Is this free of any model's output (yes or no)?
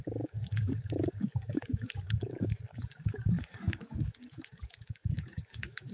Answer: no